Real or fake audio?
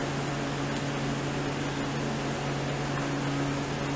real